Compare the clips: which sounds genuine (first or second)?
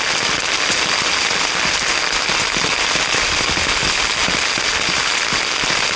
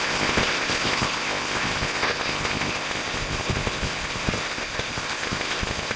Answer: first